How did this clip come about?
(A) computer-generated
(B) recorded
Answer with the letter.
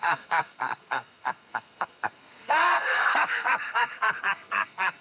A